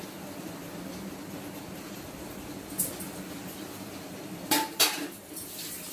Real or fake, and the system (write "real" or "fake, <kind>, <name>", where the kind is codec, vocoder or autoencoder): real